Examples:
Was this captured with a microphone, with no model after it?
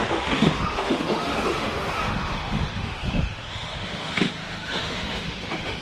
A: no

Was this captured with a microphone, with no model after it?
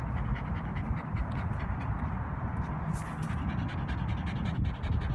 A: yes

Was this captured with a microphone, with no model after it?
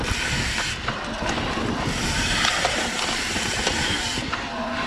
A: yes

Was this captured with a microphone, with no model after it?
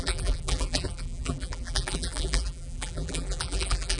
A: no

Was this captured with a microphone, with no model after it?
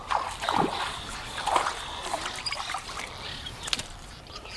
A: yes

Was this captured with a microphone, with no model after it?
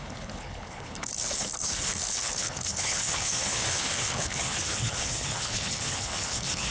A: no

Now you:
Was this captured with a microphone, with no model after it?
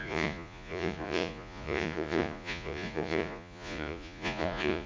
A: no